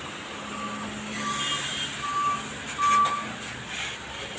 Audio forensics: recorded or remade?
recorded